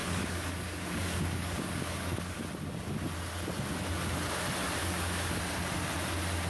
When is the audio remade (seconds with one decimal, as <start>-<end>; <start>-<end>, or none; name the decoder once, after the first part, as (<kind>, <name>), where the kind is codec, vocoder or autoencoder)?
0.0-2.4 (codec, DAC); 4.8-5.4